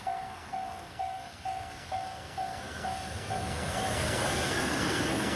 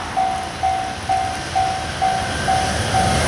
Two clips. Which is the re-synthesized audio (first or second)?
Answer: first